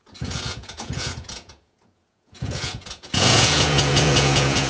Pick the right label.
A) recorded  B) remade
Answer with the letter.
B